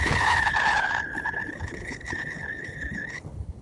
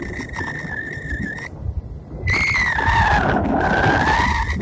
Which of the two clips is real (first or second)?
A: second